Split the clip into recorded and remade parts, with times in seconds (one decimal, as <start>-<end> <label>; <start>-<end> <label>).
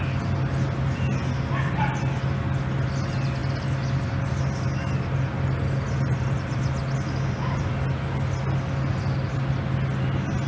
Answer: 0.0-10.5 recorded